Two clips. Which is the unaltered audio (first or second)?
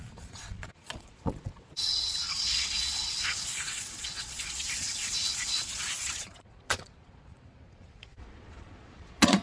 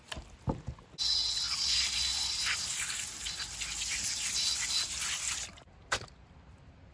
second